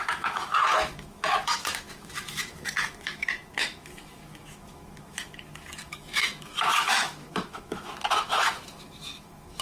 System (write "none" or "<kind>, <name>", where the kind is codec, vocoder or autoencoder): autoencoder, DAC-VAE